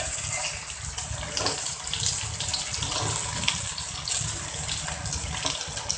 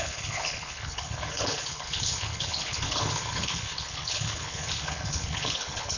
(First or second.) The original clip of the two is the first